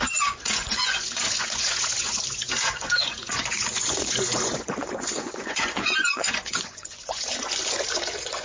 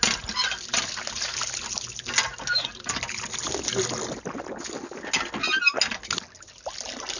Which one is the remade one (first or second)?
first